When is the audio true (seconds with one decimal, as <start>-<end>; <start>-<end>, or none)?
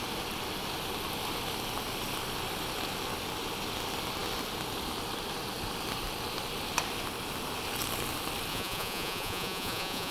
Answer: 0.0-8.5